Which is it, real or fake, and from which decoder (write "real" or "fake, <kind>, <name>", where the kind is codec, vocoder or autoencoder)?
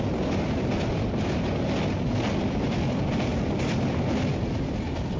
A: real